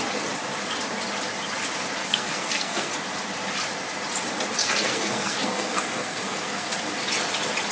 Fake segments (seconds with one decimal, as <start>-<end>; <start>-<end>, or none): 2.0-2.9; 4.6-6.7